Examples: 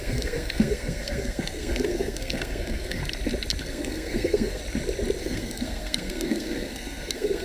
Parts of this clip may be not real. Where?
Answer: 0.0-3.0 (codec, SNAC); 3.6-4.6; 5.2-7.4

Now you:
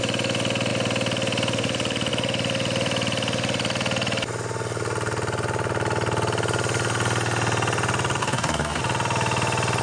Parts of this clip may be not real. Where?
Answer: 8.2-8.8 (codec, SNAC)